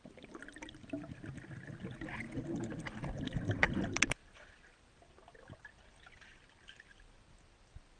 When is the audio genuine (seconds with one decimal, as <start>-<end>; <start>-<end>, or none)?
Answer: 0.0-4.2; 7.3-8.0